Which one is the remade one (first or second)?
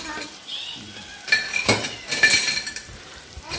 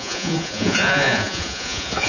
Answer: second